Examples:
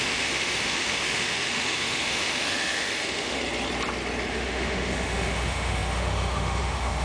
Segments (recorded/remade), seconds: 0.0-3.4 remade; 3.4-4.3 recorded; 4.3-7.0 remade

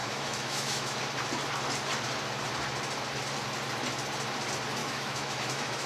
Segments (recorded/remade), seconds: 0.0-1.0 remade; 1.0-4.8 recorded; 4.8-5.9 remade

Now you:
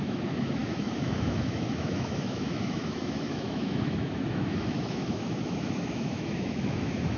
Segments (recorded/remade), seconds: 0.0-7.2 remade

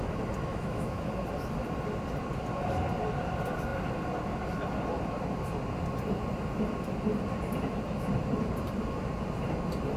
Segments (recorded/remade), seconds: 0.0-0.5 recorded; 0.5-1.1 remade; 1.1-10.0 recorded

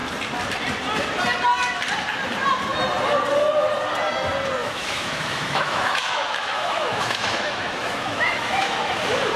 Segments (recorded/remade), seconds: 0.0-4.6 recorded; 4.6-9.0 remade; 9.0-9.4 recorded

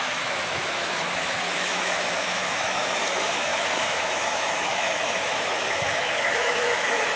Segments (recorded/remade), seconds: 0.0-7.2 remade

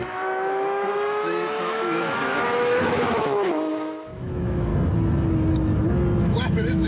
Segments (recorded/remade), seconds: 0.0-4.7 remade; 4.7-6.2 recorded; 6.2-6.9 remade

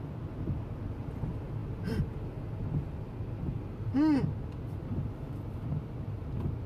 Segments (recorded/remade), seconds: 0.0-6.7 recorded